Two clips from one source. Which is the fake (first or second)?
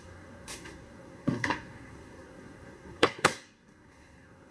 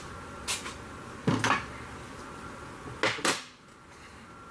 first